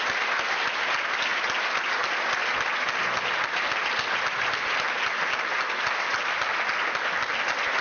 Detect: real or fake real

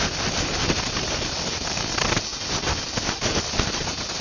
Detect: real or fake real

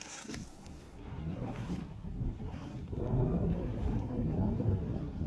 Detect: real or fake fake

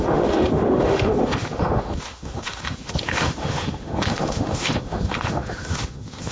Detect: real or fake fake